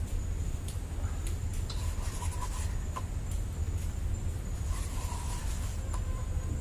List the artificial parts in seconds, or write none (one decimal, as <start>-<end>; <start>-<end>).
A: none